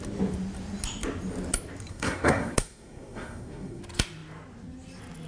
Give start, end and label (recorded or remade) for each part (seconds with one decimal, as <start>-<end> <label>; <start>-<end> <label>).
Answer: 0.0-1.9 recorded; 1.9-3.8 remade; 3.8-5.3 recorded